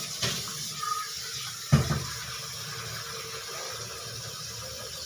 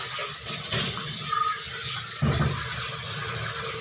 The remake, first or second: second